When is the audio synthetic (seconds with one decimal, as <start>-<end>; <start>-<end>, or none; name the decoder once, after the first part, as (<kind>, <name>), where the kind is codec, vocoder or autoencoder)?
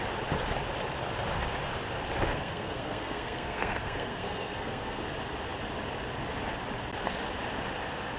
2.3-5.0 (codec, SNAC)